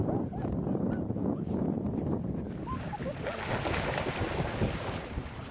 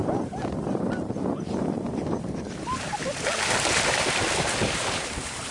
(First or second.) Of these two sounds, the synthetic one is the second